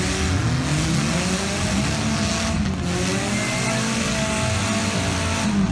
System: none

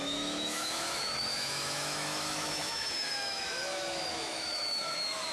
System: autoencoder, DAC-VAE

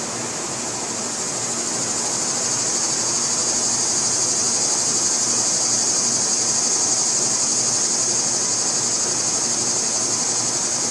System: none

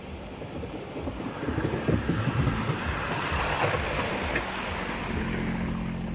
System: none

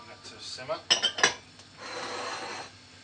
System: none